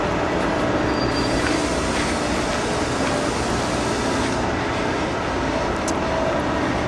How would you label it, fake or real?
real